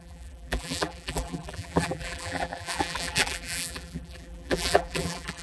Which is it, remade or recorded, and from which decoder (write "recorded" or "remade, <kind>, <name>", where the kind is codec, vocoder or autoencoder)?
remade, vocoder, BigVGAN v2